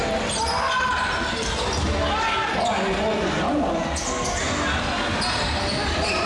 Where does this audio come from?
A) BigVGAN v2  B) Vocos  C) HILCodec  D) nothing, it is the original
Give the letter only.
D